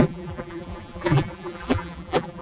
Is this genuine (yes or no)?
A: no